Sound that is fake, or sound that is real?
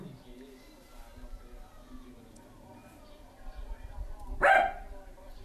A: real